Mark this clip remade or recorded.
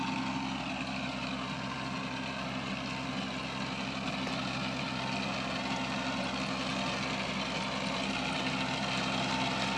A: recorded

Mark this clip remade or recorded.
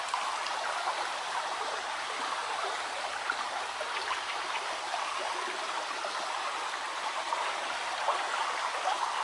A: recorded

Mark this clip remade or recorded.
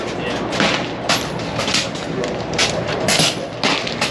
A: recorded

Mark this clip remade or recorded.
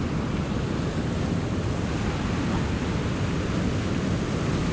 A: recorded